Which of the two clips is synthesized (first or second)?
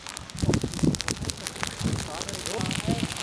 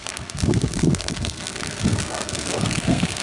second